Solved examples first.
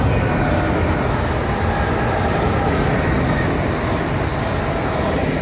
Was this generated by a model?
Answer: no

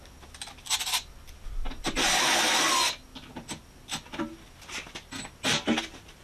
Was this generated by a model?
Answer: no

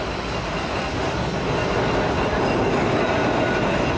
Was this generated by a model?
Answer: no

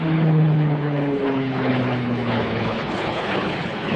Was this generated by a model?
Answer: yes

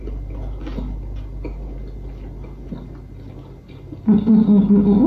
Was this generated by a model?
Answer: no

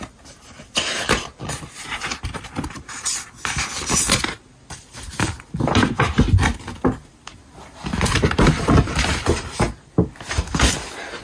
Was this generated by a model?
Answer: no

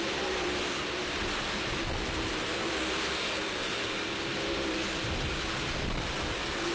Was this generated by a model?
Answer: no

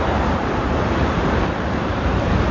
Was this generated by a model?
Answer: yes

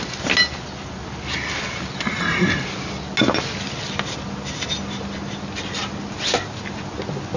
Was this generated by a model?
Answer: no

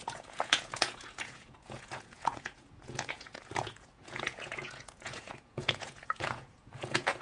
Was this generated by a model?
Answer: yes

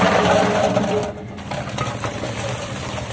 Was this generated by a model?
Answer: no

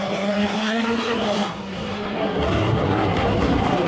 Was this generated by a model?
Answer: yes